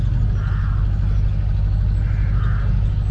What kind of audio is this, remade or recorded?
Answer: recorded